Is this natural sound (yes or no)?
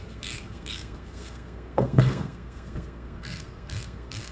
no